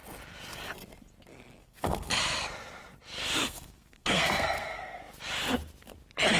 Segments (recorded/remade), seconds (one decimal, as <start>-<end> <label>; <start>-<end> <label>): 0.0-1.6 recorded; 1.6-2.2 remade; 2.2-3.4 recorded; 3.4-5.0 remade; 5.0-6.4 recorded

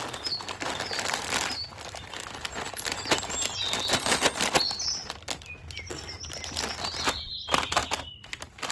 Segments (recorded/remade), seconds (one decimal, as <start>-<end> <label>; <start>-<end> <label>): 0.0-8.7 recorded

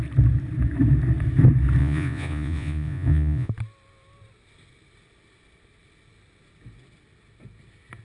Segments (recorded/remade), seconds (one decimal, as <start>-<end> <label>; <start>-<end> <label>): 0.0-1.8 recorded; 1.8-3.5 remade; 3.5-8.0 recorded

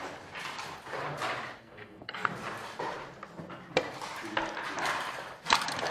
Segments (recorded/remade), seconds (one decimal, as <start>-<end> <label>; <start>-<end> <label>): 0.0-1.6 recorded; 1.6-2.3 remade; 2.3-5.9 recorded

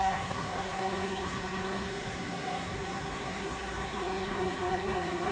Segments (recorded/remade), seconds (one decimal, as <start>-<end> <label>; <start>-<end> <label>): 0.0-5.3 remade

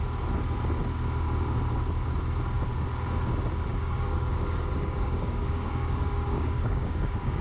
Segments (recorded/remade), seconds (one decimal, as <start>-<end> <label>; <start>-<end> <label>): 0.0-3.7 recorded; 3.7-7.4 remade

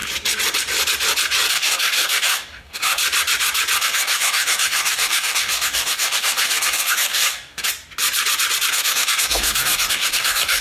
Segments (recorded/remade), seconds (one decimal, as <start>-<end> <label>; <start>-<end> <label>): 0.0-1.5 recorded; 1.5-3.0 remade; 3.0-3.8 recorded; 3.8-7.7 remade; 7.7-8.7 recorded; 8.7-10.6 remade